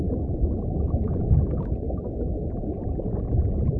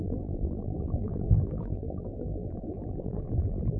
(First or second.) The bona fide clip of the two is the first